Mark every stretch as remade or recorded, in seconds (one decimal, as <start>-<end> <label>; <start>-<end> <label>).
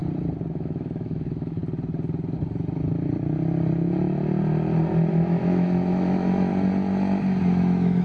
0.0-0.5 recorded; 0.5-1.6 remade; 1.6-5.1 recorded; 5.1-6.5 remade; 6.5-7.4 recorded; 7.4-8.0 remade